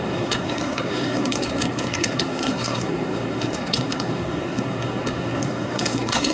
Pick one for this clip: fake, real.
fake